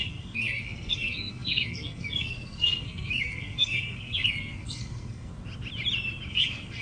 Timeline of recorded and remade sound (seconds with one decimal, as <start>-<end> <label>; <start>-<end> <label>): 0.0-5.3 remade; 5.3-6.3 recorded; 6.3-6.8 remade